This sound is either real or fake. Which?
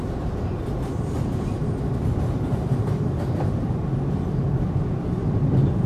real